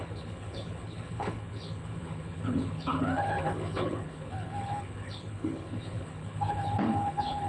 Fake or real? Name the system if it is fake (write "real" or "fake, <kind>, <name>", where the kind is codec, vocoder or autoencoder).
fake, codec, HILCodec